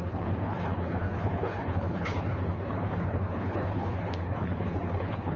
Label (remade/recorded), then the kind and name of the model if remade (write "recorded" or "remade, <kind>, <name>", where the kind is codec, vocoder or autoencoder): remade, codec, HILCodec